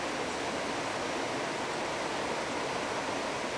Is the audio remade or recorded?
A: recorded